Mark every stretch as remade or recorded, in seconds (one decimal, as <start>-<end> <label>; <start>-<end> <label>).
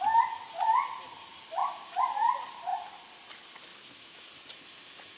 0.0-3.7 recorded; 3.7-4.3 remade; 4.3-5.2 recorded